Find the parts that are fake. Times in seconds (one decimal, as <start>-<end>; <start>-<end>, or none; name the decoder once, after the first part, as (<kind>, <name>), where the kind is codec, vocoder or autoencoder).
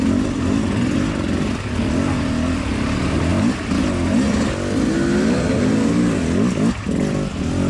none